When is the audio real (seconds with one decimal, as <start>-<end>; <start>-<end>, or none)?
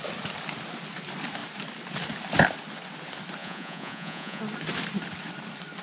0.0-3.4; 4.4-5.8